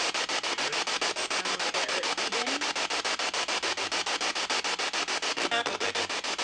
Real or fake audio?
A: real